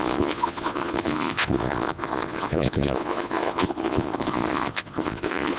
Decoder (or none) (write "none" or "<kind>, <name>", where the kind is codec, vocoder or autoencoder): vocoder, Vocos